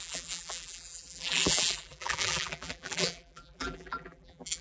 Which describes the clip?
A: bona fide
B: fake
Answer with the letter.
B